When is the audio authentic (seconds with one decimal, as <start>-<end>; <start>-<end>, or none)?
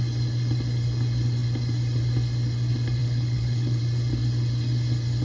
0.0-3.0; 3.8-5.2